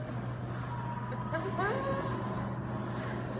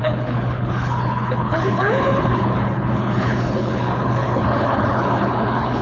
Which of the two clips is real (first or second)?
first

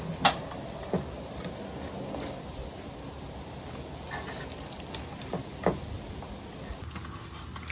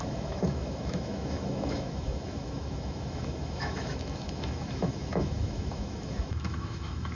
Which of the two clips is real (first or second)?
first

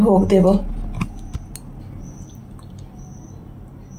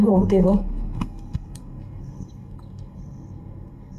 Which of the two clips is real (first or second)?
first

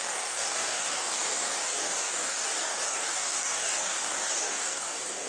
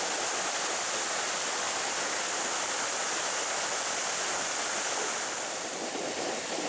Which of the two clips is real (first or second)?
second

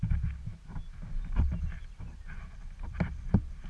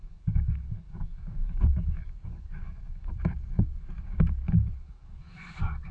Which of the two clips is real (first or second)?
first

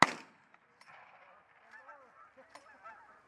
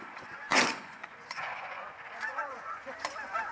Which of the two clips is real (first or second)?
first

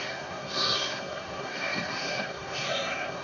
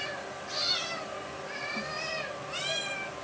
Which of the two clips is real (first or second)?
second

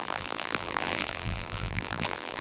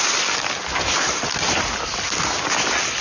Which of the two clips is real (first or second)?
second